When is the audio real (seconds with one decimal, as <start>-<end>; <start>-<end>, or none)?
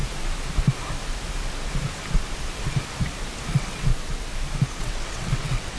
0.0-3.5; 3.9-4.8